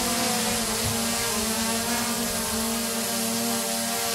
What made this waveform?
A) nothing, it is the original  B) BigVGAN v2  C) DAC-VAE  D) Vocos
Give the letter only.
A